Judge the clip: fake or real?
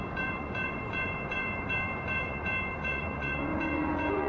fake